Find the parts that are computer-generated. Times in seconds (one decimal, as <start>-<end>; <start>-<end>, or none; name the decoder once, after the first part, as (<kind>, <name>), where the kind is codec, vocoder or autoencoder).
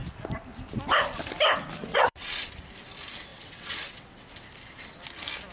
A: 1.9-2.5 (vocoder, WaveNeXt); 3.3-4.3